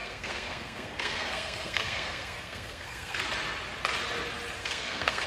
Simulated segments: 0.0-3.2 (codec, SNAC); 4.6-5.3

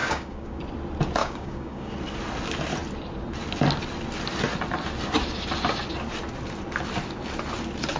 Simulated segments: 0.0-0.6 (codec, DAC); 1.2-1.9

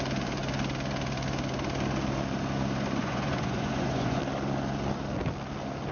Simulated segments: 3.0-4.2 (vocoder, Vocos)

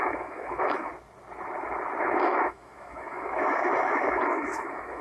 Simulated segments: 0.0-0.9 (autoencoder, DAC-VAE); 2.0-5.0

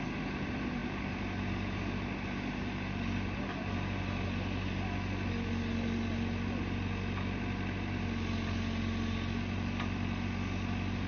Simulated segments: none

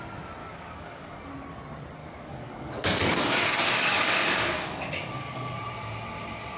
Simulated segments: 0.4-1.3 (codec, DAC); 2.0-5.6

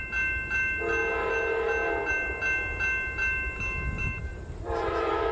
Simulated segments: 4.3-5.3 (vocoder, BigVGAN v2)